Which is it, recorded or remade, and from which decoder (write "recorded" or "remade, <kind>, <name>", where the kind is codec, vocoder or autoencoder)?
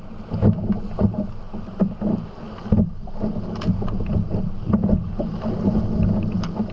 recorded